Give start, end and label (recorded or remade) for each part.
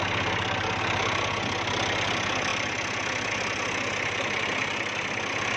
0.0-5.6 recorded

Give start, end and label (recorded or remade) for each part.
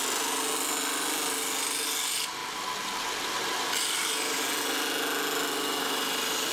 0.0-6.5 recorded